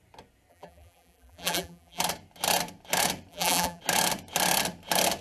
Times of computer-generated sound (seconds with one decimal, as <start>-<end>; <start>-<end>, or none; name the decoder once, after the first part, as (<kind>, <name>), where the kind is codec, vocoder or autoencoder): 0.5-2.0 (vocoder, BigVGAN v2); 3.3-3.8